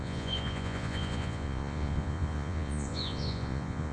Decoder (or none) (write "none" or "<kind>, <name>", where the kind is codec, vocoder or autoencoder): vocoder, Vocos